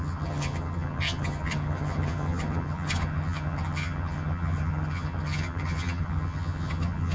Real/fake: fake